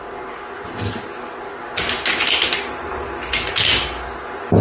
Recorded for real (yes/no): yes